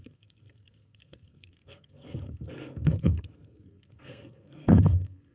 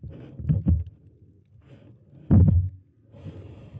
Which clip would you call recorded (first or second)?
second